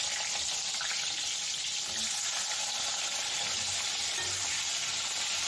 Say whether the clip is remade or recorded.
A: recorded